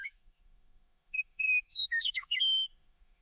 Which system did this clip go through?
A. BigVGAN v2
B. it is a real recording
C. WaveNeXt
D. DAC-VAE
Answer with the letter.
D